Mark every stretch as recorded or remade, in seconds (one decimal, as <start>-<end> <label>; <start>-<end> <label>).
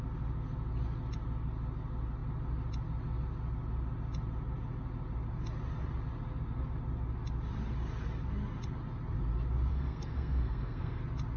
0.0-9.7 recorded; 9.7-11.0 remade; 11.0-11.4 recorded